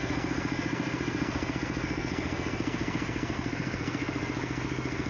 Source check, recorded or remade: remade